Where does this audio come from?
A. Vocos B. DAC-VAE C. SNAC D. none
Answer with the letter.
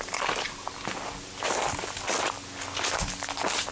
D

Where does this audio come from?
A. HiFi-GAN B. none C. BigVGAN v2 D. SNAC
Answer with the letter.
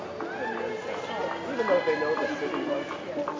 B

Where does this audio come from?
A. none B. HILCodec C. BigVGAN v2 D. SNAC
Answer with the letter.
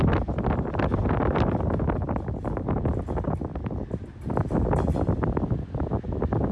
A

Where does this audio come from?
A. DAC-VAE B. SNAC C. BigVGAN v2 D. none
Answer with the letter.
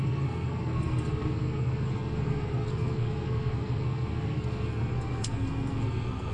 B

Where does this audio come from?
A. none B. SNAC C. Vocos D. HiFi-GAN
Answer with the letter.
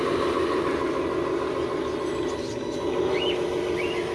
A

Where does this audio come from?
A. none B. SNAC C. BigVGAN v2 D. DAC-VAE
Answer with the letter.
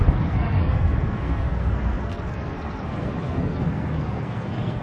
B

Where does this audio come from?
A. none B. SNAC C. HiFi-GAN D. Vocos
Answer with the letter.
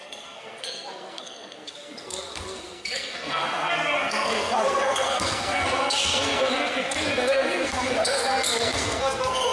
B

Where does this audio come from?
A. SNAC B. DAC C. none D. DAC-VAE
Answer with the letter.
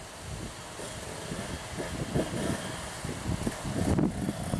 C